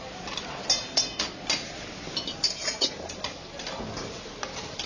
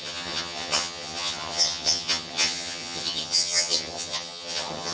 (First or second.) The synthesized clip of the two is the second